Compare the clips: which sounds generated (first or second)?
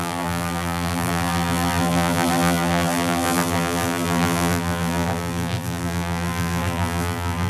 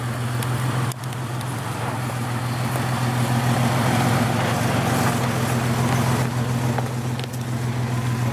first